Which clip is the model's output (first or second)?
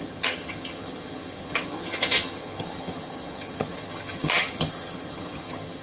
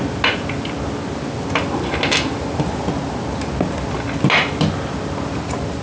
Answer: first